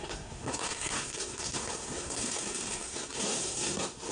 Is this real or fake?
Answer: fake